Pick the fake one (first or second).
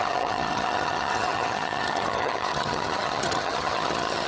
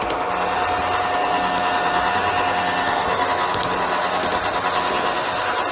first